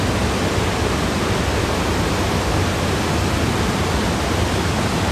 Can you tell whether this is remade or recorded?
recorded